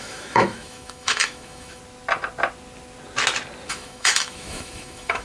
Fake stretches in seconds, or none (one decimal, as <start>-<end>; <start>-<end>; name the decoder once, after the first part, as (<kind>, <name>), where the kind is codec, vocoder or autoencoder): 0.0-1.8 (autoencoder, DAC-VAE); 3.7-5.2